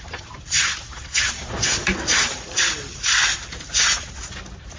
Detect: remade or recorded recorded